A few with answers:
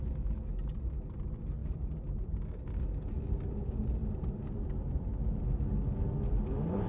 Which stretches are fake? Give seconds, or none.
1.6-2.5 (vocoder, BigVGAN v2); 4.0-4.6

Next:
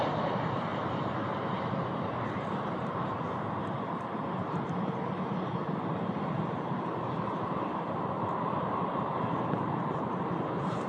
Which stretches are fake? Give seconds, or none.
0.0-10.9 (vocoder, BigVGAN v2)

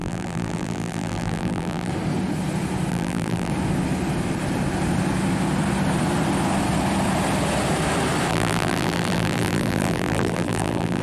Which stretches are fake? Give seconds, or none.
0.0-1.9 (vocoder, BigVGAN v2); 2.9-3.5; 8.3-11.0